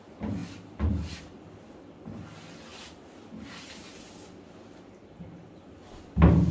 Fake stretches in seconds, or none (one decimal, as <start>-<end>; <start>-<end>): none